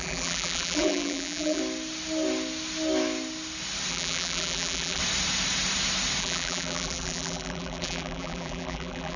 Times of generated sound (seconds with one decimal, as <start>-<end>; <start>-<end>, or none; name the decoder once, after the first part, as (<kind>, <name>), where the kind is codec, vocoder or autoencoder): 0.0-1.6 (vocoder, BigVGAN v2); 3.9-5.0; 6.2-9.2